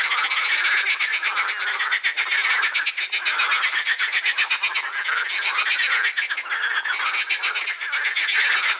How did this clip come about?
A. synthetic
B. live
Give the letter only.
B